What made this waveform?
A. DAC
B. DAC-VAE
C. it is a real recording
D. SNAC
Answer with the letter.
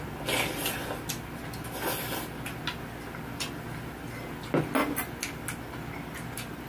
C